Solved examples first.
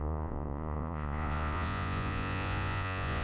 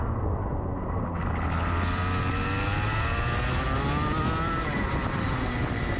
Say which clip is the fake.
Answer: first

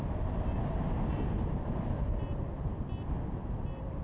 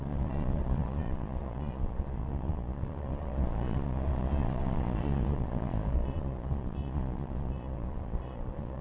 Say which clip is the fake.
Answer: second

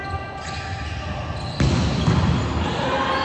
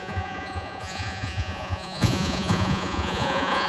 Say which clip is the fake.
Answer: second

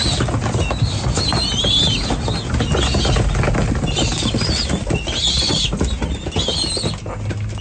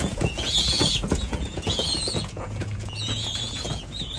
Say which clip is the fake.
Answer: second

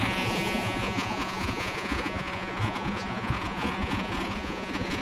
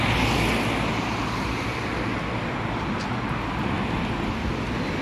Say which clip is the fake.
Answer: first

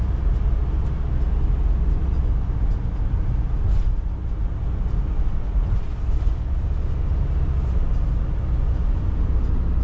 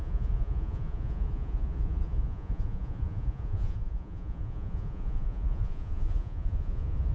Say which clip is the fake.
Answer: second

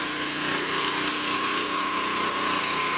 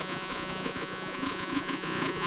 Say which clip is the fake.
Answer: second